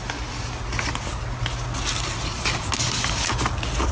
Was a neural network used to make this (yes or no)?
no